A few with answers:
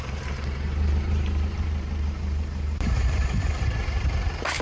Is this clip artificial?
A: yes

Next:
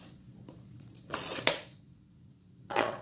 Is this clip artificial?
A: yes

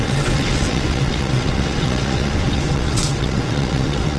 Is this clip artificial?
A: yes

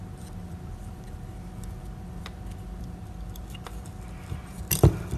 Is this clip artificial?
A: yes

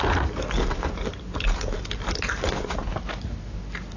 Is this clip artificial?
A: no